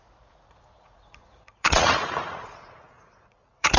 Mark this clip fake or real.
fake